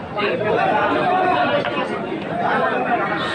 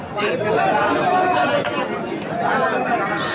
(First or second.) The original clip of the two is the second